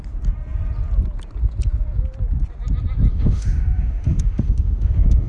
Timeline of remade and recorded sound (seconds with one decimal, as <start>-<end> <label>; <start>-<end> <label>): 0.0-3.1 recorded; 3.1-5.3 remade